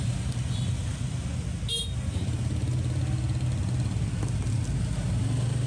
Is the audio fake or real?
real